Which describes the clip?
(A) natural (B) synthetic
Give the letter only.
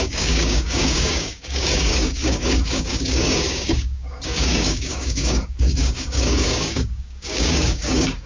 B